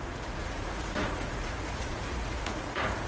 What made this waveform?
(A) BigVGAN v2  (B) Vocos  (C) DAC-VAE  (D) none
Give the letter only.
B